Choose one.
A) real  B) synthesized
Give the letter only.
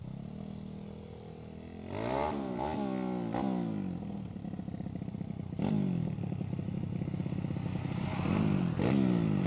A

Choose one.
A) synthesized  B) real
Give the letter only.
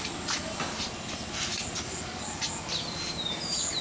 B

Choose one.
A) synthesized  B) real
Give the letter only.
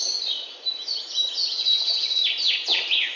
B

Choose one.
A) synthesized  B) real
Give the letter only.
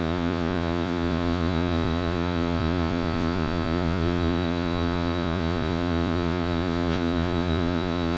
A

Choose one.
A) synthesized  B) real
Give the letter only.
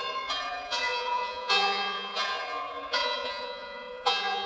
A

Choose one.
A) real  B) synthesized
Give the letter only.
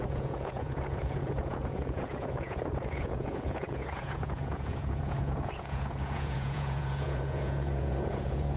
B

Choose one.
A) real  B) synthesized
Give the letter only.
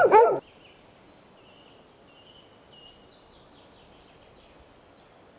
A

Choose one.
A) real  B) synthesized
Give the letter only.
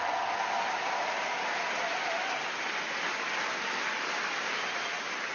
A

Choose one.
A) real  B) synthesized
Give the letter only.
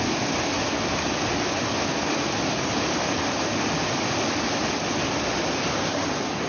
A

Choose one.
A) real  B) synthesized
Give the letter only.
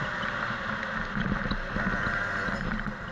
A